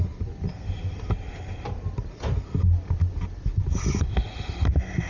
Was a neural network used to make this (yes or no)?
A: no